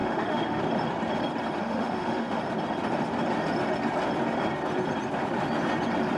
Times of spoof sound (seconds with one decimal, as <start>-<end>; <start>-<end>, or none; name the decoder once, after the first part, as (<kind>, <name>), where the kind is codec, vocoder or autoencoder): 0.0-0.6 (autoencoder, DAC-VAE); 1.6-2.4